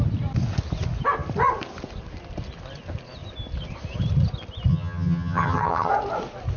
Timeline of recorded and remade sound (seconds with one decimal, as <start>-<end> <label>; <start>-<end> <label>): 0.0-4.7 recorded; 4.7-5.9 remade; 5.9-6.6 recorded